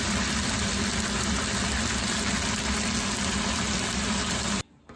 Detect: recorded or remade recorded